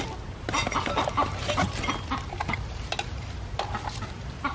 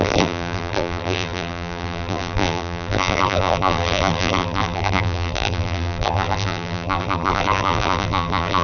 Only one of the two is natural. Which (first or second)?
first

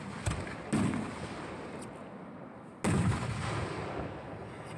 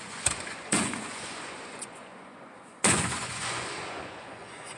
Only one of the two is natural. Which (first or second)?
first